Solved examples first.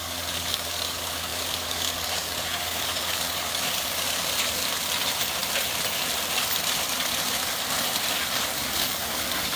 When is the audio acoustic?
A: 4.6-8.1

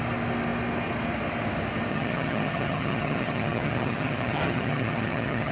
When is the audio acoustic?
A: 0.0-1.9

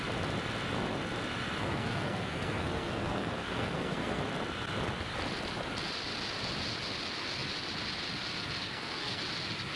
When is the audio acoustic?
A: 0.0-1.6; 4.2-8.6; 9.2-9.8

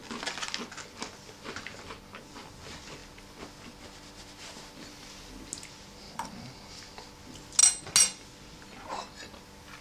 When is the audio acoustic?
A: 0.0-9.8

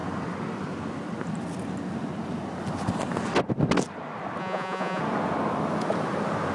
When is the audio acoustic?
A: 0.0-4.4; 5.0-6.5

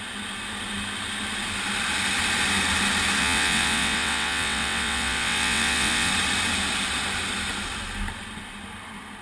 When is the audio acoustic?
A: 0.0-3.2; 6.1-9.2